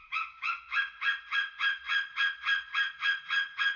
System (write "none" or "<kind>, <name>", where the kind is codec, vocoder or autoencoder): vocoder, WaveNeXt